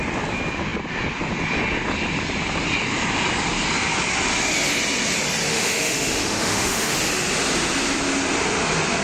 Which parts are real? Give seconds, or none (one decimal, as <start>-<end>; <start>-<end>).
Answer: 0.0-5.5; 6.9-9.0